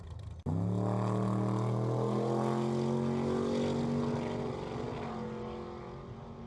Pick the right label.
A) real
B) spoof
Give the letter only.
A